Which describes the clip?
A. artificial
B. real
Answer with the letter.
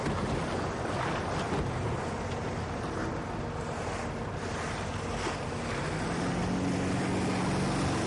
B